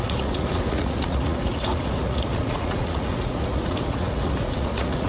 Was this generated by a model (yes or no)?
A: yes